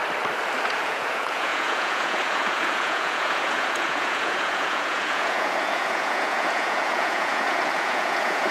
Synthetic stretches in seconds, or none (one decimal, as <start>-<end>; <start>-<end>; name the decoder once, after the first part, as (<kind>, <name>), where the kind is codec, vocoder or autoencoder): 0.7-8.5 (vocoder, Vocos)